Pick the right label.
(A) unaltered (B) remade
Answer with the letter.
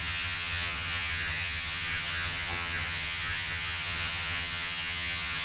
B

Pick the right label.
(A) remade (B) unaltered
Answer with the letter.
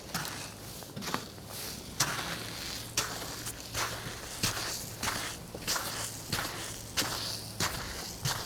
B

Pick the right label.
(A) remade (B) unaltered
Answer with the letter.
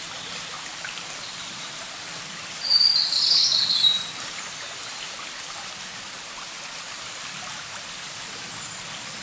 B